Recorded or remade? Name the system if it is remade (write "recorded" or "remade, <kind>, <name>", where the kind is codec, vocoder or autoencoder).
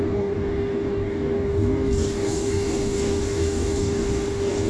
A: remade, codec, DAC